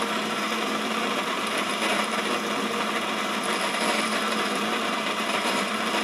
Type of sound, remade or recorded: remade